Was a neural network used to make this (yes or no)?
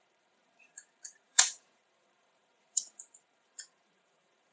yes